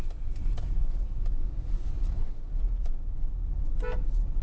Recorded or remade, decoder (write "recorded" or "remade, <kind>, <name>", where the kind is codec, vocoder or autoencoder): recorded